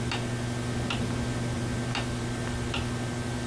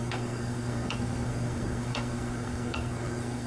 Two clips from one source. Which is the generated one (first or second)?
second